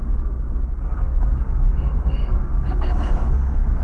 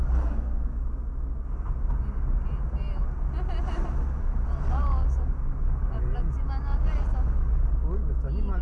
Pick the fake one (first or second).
first